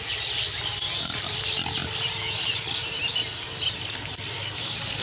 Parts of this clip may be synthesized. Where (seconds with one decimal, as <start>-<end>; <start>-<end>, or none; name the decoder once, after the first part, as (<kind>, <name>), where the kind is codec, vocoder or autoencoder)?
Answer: 1.8-4.6 (vocoder, BigVGAN v2)

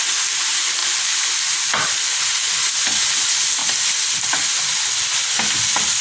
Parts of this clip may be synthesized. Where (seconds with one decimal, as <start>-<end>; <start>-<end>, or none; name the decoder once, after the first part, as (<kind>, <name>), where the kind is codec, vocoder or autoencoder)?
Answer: 0.8-2.2 (vocoder, BigVGAN v2)